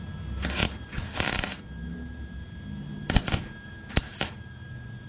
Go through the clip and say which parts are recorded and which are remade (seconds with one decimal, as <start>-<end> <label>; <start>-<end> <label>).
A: 0.0-0.6 recorded; 0.6-1.6 remade; 1.6-3.3 recorded; 3.3-5.1 remade